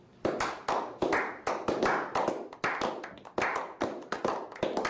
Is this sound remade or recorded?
recorded